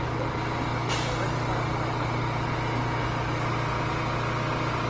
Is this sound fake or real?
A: real